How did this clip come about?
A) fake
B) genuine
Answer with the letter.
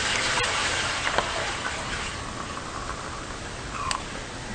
B